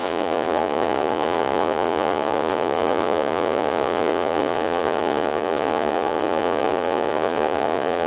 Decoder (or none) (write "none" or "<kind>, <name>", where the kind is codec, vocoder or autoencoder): vocoder, Vocos